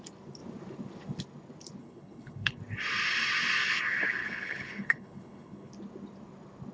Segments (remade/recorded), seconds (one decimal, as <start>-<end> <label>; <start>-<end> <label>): 0.0-1.8 recorded; 1.8-2.6 remade; 2.6-4.2 recorded; 4.2-5.7 remade; 5.7-6.7 recorded